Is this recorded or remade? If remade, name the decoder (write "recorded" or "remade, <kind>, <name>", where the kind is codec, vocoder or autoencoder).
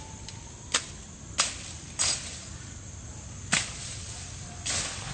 recorded